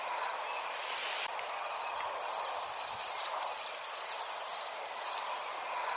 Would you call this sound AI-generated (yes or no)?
no